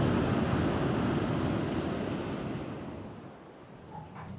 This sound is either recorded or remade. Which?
recorded